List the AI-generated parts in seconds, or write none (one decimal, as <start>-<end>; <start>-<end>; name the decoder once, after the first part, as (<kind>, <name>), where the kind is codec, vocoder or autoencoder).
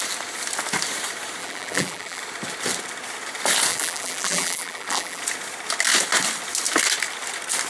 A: 1.4-2.2 (vocoder, BigVGAN v2); 3.7-5.2